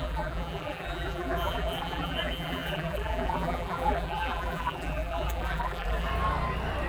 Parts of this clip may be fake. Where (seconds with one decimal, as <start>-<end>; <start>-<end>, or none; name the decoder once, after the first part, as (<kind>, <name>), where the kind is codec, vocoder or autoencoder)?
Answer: 0.0-6.1 (vocoder, BigVGAN v2)